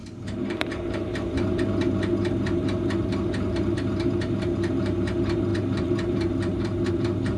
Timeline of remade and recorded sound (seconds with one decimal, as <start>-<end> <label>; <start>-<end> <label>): 0.0-7.4 remade